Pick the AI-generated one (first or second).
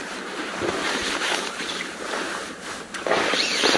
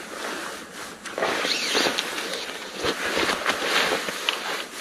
first